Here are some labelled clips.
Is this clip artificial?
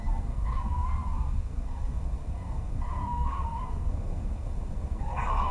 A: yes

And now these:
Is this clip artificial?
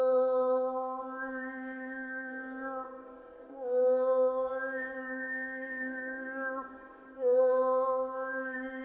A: yes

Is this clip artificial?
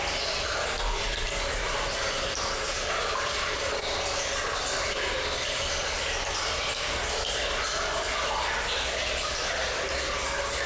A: no